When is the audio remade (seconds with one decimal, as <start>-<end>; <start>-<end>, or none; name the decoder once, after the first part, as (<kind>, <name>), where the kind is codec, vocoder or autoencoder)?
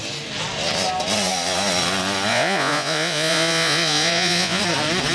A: 2.3-4.6 (vocoder, Vocos)